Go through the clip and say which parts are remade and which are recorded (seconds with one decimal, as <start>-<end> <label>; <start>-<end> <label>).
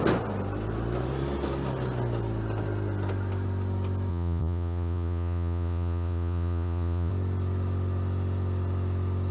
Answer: 0.0-4.1 recorded; 4.1-7.1 remade; 7.1-9.3 recorded